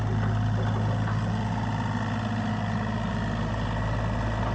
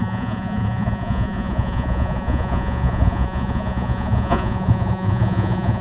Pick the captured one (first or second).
first